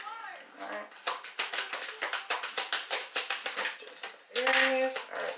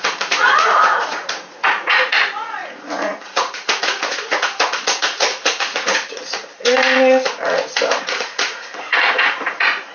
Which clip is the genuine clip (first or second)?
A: first